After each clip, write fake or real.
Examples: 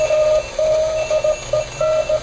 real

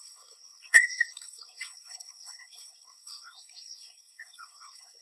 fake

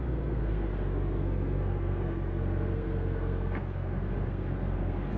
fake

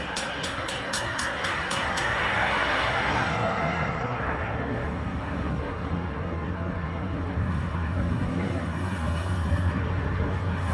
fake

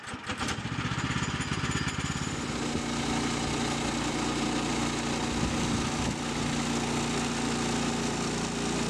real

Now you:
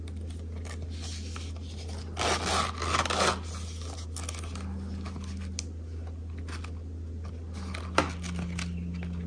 real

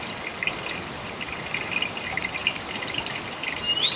real